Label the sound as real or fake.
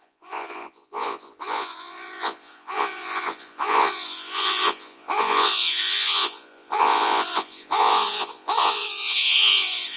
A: fake